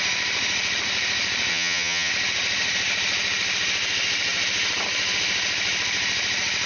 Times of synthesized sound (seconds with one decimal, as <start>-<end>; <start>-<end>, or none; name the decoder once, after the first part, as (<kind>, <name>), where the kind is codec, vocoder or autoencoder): 1.5-2.1 (vocoder, HiFi-GAN)